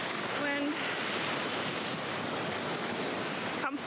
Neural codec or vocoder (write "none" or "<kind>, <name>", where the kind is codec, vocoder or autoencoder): none